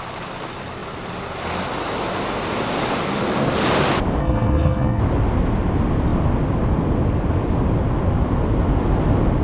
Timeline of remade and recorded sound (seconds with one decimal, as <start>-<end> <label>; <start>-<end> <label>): 0.0-4.2 recorded; 4.2-5.0 remade; 5.0-9.4 recorded